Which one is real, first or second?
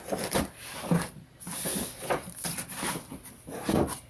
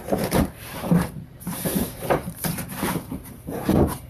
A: first